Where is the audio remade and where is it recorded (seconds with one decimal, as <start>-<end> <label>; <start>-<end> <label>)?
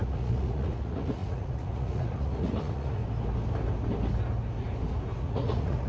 0.0-3.0 remade; 3.0-5.2 recorded; 5.2-5.9 remade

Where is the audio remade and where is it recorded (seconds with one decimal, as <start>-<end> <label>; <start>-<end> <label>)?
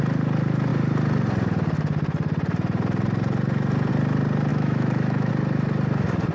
0.0-4.5 recorded; 4.5-5.3 remade; 5.3-6.3 recorded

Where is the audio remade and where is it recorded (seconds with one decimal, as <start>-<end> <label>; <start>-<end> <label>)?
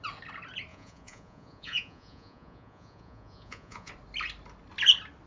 0.0-0.7 recorded; 0.7-3.9 remade; 3.9-5.3 recorded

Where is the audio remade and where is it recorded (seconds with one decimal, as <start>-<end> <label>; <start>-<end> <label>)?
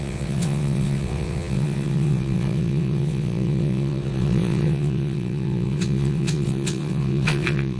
0.0-7.8 remade